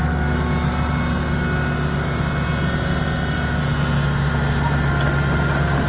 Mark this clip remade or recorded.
recorded